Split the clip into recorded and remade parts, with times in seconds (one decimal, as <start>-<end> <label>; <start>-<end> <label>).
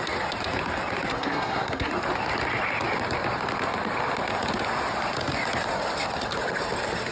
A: 0.0-1.1 recorded; 1.1-1.9 remade; 1.9-7.1 recorded